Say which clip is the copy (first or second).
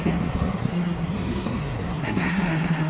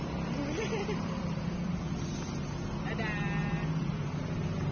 first